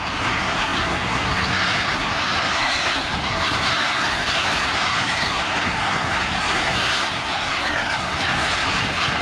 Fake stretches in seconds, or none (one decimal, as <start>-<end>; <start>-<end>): 0.0-9.2